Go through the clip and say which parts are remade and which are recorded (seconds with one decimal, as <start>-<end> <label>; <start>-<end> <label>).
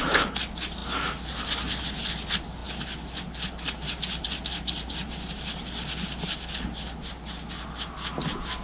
0.0-8.6 recorded